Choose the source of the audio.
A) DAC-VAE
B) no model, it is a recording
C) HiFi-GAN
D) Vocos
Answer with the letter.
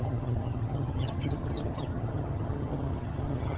C